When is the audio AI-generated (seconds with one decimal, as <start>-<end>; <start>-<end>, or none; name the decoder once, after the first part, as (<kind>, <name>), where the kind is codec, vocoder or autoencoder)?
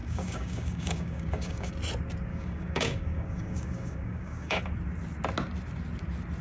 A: 0.0-1.7 (codec, DAC); 2.3-4.6